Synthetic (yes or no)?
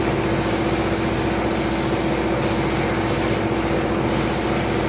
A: no